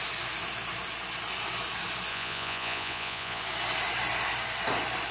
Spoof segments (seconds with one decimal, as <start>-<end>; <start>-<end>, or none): 2.1-3.4